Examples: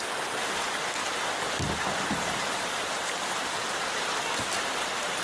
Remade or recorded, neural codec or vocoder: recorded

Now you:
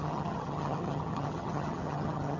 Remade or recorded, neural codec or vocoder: remade, vocoder, HiFi-GAN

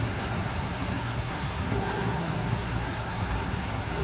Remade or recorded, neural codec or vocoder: remade, codec, SNAC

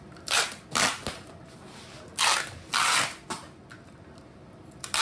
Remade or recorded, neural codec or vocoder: recorded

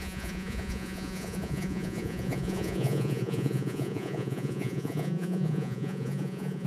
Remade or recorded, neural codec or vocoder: remade, vocoder, Vocos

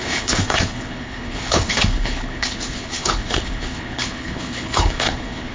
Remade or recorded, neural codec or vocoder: remade, codec, HILCodec